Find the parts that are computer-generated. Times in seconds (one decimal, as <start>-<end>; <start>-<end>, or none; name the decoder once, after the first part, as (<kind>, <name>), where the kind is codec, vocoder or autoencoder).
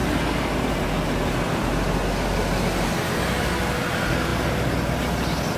none